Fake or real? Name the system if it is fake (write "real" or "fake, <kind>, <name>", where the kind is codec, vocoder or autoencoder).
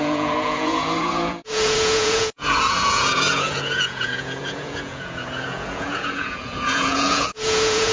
fake, vocoder, Vocos